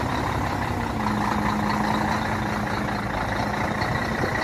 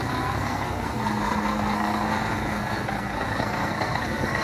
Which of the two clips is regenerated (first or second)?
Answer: second